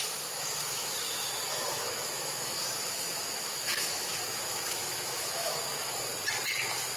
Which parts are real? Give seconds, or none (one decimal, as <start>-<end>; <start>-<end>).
6.1-7.0